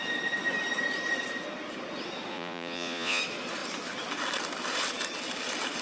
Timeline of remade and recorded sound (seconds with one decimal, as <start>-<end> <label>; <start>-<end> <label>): 0.0-2.3 recorded; 2.3-3.2 remade; 3.2-5.8 recorded